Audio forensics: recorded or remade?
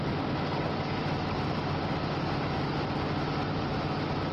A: recorded